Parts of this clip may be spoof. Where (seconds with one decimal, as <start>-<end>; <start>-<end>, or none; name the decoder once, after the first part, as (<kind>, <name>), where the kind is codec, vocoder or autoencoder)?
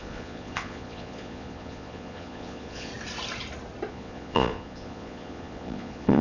0.0-2.9 (vocoder, Vocos); 3.9-6.2